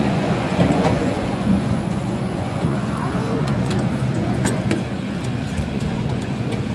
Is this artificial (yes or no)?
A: yes